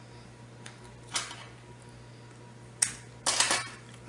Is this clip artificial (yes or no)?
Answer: no